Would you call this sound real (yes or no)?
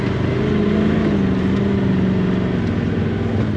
yes